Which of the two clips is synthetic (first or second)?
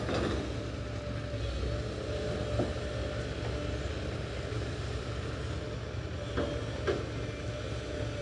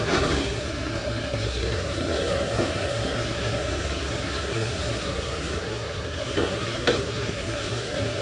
second